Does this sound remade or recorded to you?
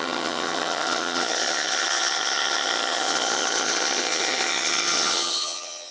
remade